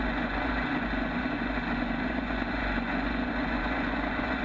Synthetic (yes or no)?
yes